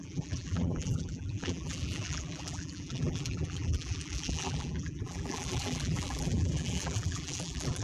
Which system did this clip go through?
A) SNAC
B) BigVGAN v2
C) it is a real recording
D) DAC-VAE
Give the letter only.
B